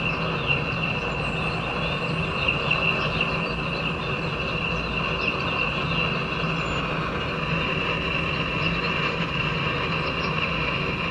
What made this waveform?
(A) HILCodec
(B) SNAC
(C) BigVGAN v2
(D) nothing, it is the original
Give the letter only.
D